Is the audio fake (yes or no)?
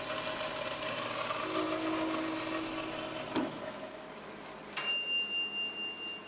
no